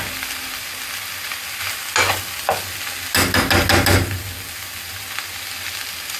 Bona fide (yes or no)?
yes